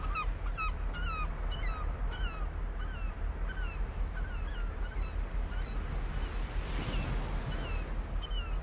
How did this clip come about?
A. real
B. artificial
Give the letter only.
A